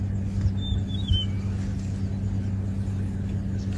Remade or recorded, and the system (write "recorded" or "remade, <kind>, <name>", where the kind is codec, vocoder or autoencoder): recorded